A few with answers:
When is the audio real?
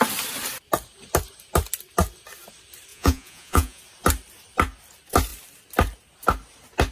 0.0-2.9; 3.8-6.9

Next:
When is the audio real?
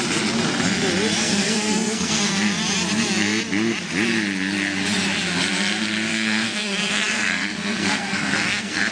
0.0-1.2; 2.3-6.1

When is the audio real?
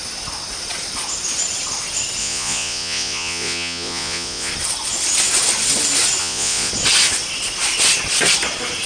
0.0-2.2; 4.5-6.2; 6.7-8.9